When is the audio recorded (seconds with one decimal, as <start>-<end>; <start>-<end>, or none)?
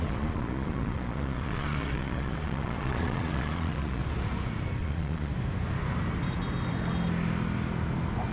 4.0-4.8; 5.3-8.3